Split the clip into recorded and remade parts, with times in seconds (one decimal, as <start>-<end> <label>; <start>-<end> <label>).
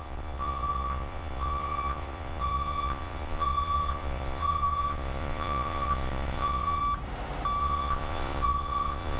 0.0-6.8 remade; 6.8-7.6 recorded; 7.6-9.2 remade